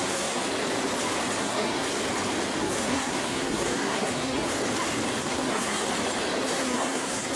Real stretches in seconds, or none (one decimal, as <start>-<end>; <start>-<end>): 0.4-1.4; 1.9-2.6; 4.5-5.2; 5.9-6.5